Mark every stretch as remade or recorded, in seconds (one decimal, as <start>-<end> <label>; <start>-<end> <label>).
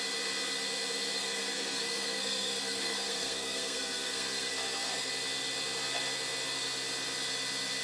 0.0-1.2 recorded; 1.2-5.1 remade; 5.1-7.8 recorded